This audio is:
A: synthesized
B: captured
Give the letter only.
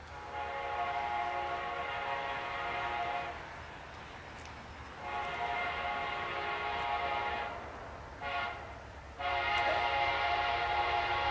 B